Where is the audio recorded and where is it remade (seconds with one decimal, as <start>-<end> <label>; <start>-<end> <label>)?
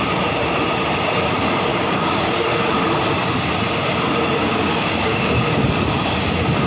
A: 0.0-1.7 recorded; 1.7-2.3 remade; 2.3-4.4 recorded; 4.4-5.7 remade; 5.7-6.7 recorded